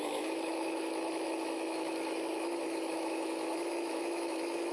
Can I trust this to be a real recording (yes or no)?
no